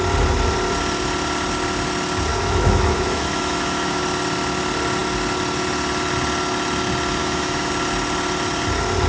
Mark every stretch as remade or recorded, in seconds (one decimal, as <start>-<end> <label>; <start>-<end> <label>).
0.0-2.3 recorded; 2.3-4.0 remade; 4.0-7.2 recorded; 7.2-7.7 remade; 7.7-9.1 recorded